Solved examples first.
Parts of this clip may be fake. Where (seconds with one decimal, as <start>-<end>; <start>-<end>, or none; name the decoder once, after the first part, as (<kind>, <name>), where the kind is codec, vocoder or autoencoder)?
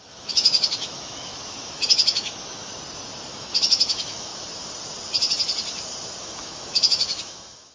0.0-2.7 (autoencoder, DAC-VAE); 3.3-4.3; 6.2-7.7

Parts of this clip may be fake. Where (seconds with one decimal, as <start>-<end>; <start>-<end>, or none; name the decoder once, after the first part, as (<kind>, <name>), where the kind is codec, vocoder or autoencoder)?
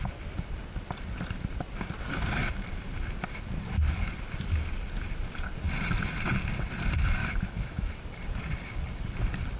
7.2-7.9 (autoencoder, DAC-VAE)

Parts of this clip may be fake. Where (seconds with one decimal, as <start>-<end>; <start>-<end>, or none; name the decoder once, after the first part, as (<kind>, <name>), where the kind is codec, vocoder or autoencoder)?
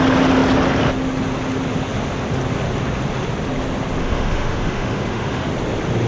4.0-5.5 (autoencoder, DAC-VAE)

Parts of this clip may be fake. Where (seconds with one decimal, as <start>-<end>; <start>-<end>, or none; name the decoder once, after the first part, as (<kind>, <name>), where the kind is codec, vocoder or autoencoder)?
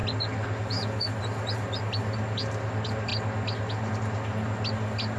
none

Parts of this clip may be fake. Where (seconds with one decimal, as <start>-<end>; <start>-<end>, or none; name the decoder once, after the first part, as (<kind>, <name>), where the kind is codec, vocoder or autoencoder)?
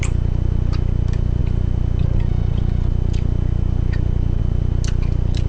none